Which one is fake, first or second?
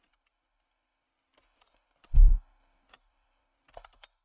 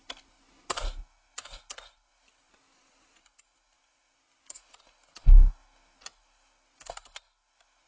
first